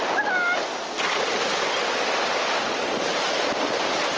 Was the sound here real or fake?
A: fake